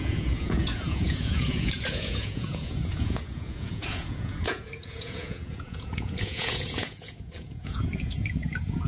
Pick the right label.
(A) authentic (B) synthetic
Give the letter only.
B